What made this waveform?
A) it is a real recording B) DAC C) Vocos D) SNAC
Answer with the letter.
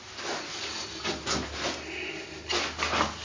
A